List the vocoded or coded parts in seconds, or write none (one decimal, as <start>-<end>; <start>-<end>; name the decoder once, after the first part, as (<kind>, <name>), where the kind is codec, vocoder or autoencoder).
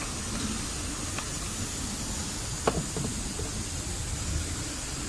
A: none